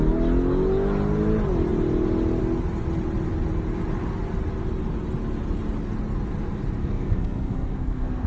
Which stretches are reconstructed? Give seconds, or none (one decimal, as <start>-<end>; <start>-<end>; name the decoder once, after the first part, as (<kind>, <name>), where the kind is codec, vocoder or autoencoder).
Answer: 6.8-8.3 (codec, SNAC)